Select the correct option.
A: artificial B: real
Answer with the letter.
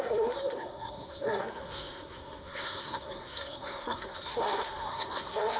A